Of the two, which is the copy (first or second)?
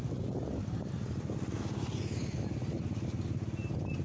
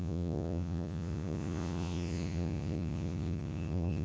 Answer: second